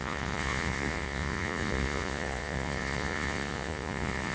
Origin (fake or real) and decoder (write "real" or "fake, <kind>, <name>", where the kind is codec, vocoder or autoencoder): fake, vocoder, Vocos